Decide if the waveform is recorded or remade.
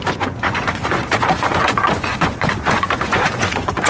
remade